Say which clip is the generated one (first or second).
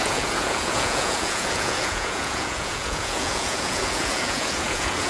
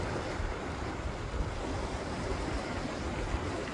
first